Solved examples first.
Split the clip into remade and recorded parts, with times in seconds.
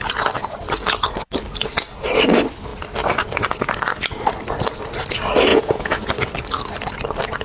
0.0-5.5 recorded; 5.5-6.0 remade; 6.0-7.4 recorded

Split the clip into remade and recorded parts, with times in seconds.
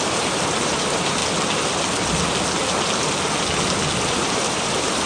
0.0-1.2 remade; 1.2-4.0 recorded; 4.0-5.1 remade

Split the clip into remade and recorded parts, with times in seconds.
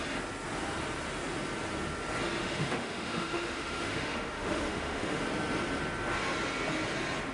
0.0-2.4 recorded; 2.4-5.2 remade; 5.2-7.3 recorded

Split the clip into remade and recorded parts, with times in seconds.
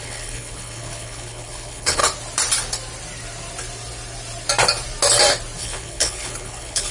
0.0-2.0 remade; 2.0-5.6 recorded; 5.6-6.9 remade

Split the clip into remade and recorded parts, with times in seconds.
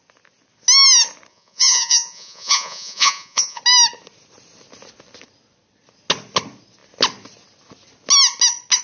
0.0-1.3 recorded; 1.3-3.6 remade; 3.6-8.8 recorded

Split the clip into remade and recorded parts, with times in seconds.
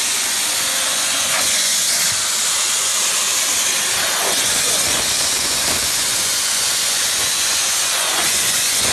0.0-1.8 remade; 1.8-2.5 recorded; 2.5-2.9 remade; 2.9-4.2 recorded; 4.2-8.9 remade